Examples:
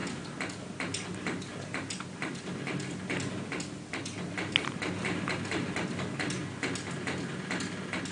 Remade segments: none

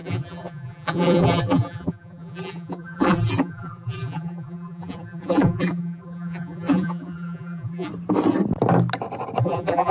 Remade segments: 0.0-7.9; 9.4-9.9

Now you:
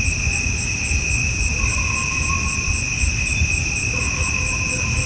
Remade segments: none

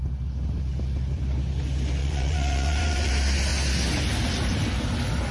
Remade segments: 2.0-3.1